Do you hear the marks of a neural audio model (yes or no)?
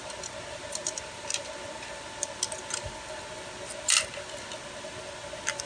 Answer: no